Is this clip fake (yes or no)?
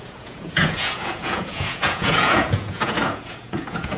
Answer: yes